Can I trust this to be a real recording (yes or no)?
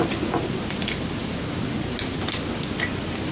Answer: no